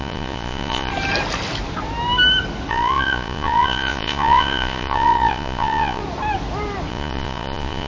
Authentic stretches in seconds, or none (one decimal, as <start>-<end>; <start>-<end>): 0.9-2.7; 6.0-6.9

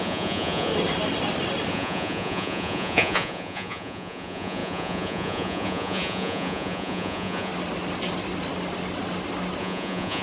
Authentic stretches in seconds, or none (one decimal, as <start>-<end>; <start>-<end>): 0.7-1.7; 7.5-9.6

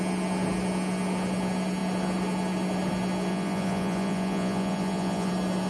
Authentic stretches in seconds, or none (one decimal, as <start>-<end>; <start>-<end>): 0.0-3.3; 5.3-5.7

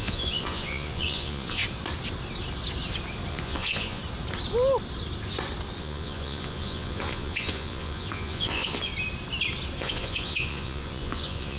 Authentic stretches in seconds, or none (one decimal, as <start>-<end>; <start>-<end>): 1.6-3.3; 4.0-5.8; 8.9-9.8

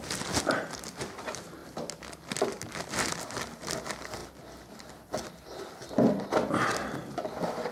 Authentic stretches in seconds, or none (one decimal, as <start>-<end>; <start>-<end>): 0.0-7.7

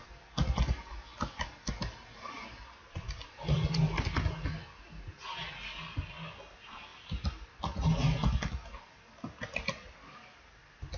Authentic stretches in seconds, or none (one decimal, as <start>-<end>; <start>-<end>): 0.0-11.0

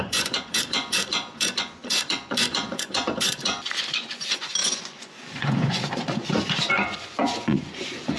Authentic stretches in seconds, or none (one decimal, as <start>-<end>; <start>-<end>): none